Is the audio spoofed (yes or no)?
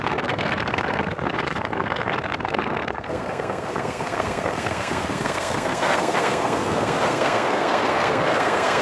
yes